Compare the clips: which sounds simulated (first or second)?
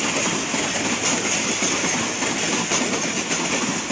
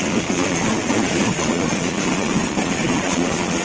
second